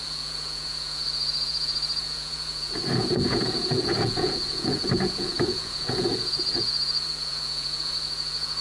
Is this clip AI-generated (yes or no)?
yes